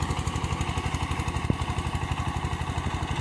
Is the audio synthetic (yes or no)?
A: no